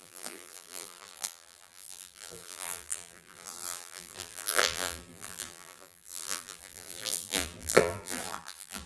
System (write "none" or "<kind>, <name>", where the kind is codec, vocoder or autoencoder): vocoder, BigVGAN v2